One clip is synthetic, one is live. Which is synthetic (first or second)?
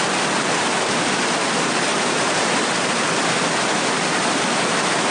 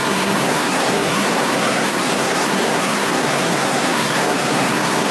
second